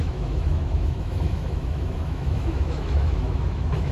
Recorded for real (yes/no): no